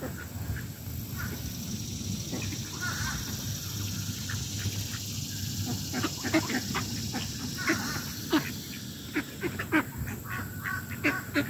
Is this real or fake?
real